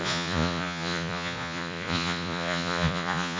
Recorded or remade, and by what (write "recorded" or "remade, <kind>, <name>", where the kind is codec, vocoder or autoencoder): remade, vocoder, Vocos